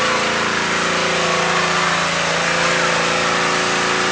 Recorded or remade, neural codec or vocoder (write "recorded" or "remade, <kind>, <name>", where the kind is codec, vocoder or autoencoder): recorded